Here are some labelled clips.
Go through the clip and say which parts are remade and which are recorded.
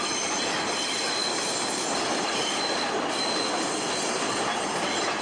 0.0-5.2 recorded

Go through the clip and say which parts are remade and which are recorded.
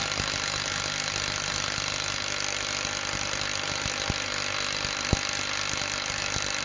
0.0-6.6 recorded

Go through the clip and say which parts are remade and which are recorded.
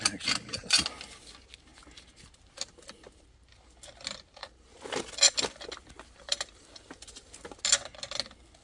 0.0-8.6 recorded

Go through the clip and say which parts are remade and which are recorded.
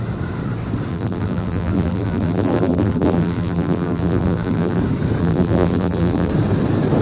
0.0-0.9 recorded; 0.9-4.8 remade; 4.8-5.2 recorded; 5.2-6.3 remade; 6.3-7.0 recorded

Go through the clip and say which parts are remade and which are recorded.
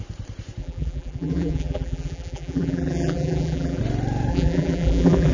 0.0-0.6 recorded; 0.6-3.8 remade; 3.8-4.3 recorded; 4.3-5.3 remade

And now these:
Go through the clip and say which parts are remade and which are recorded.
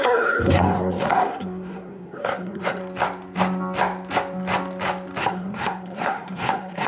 0.0-2.8 remade; 2.8-5.2 recorded; 5.2-6.9 remade